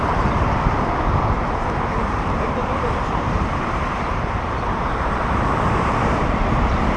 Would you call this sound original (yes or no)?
no